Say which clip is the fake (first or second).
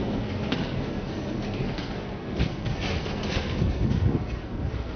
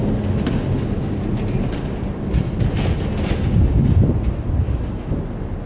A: first